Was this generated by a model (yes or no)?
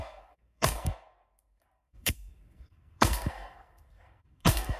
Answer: yes